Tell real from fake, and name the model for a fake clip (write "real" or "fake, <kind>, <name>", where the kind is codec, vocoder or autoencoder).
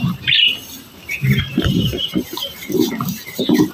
fake, vocoder, BigVGAN v2